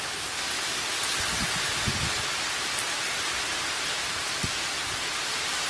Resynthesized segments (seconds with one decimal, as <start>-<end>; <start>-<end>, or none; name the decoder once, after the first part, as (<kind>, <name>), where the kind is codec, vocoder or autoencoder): none